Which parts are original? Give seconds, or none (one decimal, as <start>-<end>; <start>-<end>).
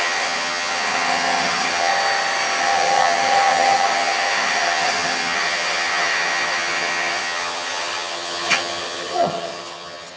1.9-2.6